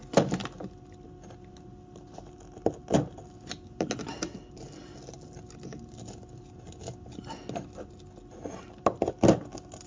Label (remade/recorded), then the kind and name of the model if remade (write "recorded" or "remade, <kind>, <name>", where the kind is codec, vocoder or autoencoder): recorded